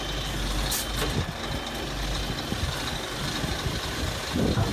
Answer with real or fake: real